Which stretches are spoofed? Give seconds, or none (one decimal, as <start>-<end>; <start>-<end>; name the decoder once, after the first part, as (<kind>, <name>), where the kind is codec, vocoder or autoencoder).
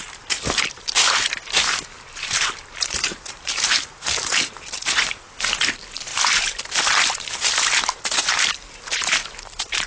0.0-6.1 (vocoder, BigVGAN v2); 8.2-9.9